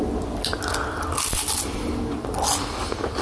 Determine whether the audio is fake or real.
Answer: real